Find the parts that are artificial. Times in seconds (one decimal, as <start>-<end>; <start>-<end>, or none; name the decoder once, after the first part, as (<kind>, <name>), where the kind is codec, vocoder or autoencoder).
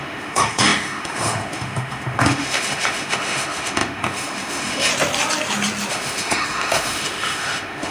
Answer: 0.0-4.9 (autoencoder, DAC-VAE); 5.9-7.9